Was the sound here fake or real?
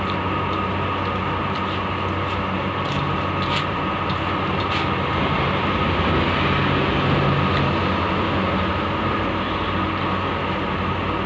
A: real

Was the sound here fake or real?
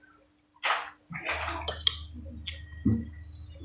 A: real